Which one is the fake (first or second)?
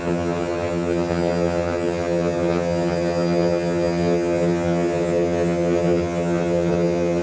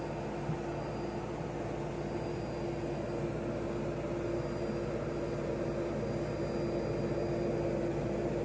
first